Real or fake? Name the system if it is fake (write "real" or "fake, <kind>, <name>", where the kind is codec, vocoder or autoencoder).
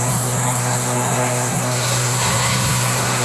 fake, codec, SNAC